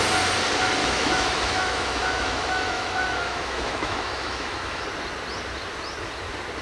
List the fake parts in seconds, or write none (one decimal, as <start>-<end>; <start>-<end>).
0.8-4.8